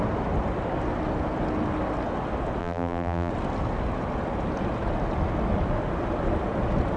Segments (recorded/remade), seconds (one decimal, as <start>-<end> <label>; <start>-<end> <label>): 0.0-2.6 recorded; 2.6-3.3 remade; 3.3-7.0 recorded